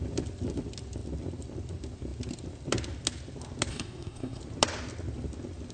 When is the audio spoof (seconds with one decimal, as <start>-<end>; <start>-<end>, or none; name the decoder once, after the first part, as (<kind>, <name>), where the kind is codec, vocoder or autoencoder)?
3.7-4.4 (codec, SNAC)